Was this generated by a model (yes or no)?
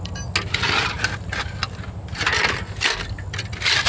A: no